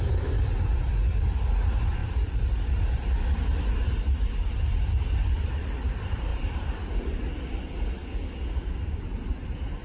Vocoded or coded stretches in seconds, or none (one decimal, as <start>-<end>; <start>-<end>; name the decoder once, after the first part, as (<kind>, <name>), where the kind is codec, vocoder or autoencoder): 8.0-9.0 (codec, DAC)